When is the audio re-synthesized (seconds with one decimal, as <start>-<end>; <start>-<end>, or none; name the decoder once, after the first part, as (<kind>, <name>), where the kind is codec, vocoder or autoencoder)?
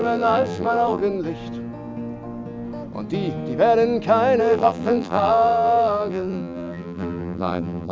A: 0.0-1.0 (vocoder, BigVGAN v2); 4.4-7.9